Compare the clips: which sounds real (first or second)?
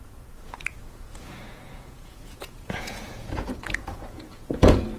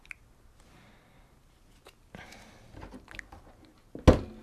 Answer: second